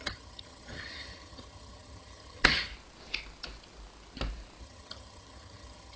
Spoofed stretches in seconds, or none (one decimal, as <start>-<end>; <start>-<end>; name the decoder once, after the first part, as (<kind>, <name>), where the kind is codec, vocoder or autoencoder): 0.0-2.7 (vocoder, HiFi-GAN); 4.6-6.0